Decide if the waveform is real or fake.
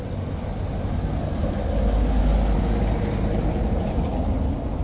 real